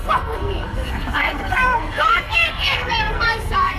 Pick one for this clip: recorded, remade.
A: remade